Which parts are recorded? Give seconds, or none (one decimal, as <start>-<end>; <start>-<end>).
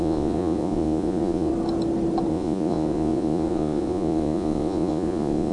1.5-2.3